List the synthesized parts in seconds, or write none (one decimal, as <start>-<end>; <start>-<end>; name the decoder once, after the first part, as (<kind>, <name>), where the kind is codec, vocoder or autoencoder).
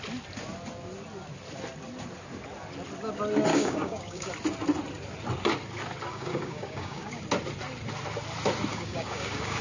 3.5-4.3 (codec, DAC); 6.1-7.2; 8.7-9.6